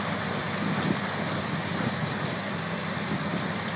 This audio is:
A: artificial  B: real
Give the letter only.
A